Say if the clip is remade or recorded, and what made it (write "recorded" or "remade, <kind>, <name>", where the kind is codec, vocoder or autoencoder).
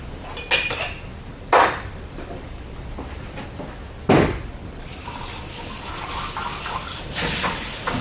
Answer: recorded